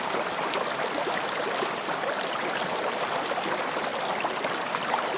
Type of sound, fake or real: real